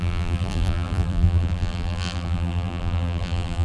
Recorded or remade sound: remade